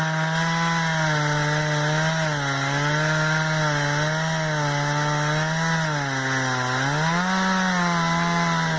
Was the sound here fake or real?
real